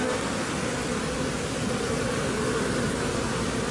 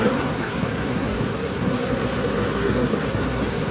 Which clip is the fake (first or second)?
second